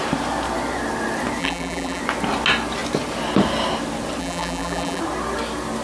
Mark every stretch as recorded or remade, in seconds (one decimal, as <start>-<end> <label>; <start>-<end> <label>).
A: 0.0-1.4 recorded; 1.4-2.0 remade; 2.0-4.2 recorded; 4.2-5.0 remade; 5.0-5.8 recorded

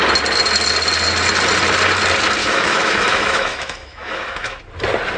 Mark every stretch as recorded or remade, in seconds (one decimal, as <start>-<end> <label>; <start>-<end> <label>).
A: 0.0-2.4 recorded; 2.4-4.6 remade; 4.6-5.2 recorded

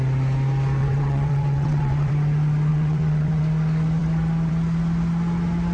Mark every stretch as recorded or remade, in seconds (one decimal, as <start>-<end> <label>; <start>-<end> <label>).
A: 0.0-0.8 recorded; 0.8-2.1 remade; 2.1-2.7 recorded; 2.7-3.4 remade; 3.4-5.7 recorded

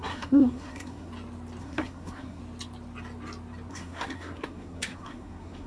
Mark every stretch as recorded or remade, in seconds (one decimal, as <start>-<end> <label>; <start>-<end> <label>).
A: 0.0-1.1 remade; 1.1-1.6 recorded; 1.6-2.4 remade; 2.4-3.7 recorded; 3.7-5.7 remade